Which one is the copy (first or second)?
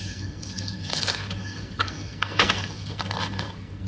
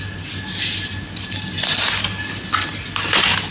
first